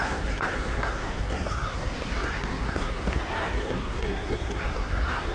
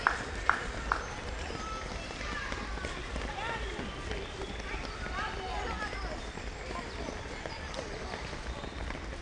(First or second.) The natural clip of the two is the second